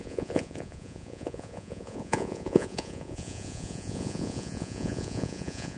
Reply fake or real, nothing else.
fake